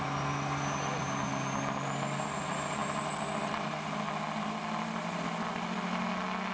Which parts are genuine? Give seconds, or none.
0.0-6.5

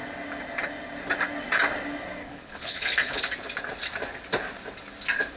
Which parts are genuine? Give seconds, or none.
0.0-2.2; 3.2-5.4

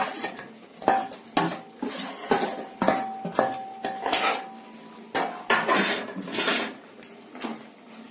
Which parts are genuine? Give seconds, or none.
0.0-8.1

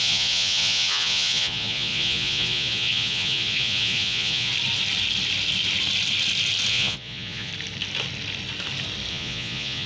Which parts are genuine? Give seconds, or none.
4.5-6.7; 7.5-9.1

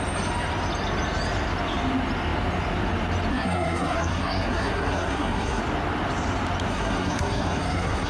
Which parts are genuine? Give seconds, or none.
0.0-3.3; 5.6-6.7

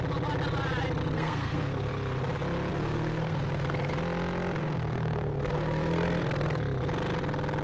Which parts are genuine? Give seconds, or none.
0.0-1.0; 1.9-2.7; 3.9-4.6; 6.6-7.6

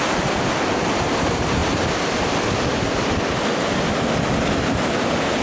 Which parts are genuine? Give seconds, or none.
0.0-1.6; 4.4-5.4